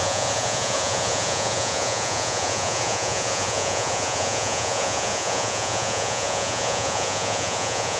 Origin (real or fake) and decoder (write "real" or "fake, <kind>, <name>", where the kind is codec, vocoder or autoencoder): fake, vocoder, Vocos